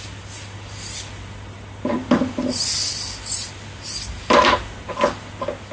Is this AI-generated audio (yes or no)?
no